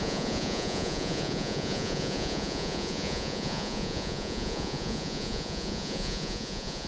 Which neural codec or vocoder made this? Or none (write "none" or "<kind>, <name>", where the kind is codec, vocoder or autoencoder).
vocoder, Vocos